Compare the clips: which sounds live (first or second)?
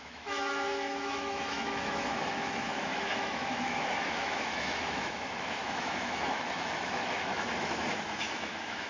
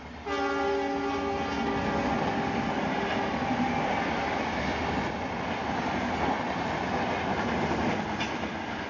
second